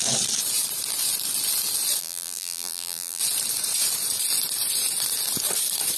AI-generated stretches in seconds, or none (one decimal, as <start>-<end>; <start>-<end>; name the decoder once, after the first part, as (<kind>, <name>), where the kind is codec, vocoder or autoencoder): 2.0-3.2 (vocoder, BigVGAN v2)

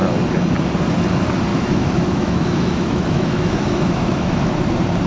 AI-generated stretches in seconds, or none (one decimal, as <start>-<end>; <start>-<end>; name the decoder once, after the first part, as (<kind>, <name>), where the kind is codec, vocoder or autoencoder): 1.5-4.6 (autoencoder, DAC-VAE)

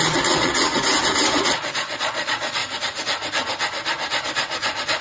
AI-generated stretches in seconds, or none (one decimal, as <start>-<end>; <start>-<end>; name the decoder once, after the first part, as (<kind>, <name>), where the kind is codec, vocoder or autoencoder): 0.0-0.8 (vocoder, Vocos); 1.4-2.6

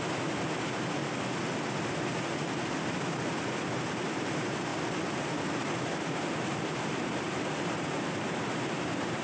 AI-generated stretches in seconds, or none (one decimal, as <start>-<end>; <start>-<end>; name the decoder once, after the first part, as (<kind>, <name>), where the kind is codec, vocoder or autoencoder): 0.0-1.0 (vocoder, BigVGAN v2); 3.9-4.7; 5.7-9.2

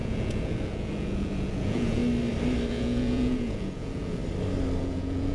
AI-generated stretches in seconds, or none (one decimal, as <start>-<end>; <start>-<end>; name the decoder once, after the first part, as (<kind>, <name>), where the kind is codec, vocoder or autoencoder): 0.0-2.0 (vocoder, Vocos); 2.7-4.2; 4.8-5.3

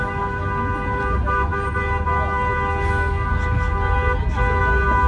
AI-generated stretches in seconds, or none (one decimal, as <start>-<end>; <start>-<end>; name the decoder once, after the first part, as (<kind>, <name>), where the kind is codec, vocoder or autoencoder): none